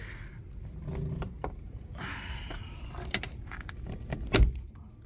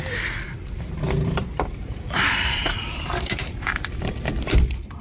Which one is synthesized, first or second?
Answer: second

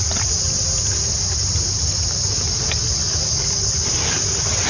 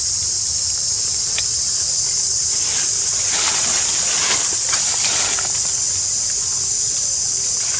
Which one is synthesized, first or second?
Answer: second